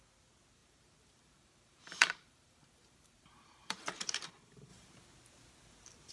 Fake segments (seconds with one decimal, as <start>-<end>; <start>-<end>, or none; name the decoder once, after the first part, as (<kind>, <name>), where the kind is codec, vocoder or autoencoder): 0.6-4.3 (vocoder, BigVGAN v2)